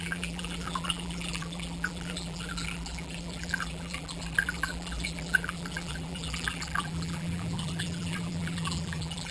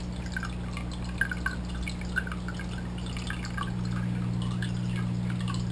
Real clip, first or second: second